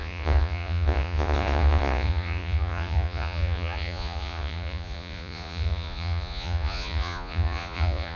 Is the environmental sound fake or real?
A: fake